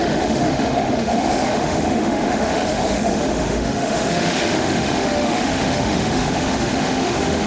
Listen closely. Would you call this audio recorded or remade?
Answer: remade